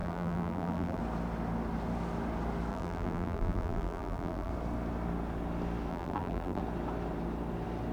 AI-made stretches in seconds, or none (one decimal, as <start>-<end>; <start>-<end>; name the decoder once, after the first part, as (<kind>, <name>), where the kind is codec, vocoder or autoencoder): 0.0-1.0 (vocoder, BigVGAN v2); 2.7-4.5; 5.9-6.6